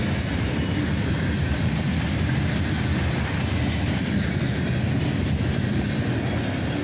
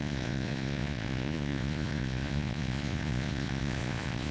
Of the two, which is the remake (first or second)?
second